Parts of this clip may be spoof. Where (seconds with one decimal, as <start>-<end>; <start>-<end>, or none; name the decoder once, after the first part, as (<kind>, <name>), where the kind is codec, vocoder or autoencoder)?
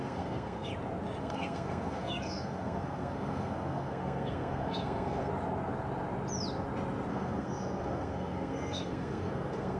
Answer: 0.0-0.7 (codec, SNAC); 1.2-5.3; 7.1-9.8